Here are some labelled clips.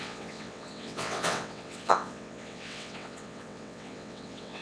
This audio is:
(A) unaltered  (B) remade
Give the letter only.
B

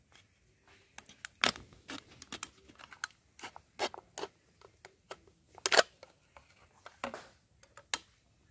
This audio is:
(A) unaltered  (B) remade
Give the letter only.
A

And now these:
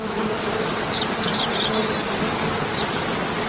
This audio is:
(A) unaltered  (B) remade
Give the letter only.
A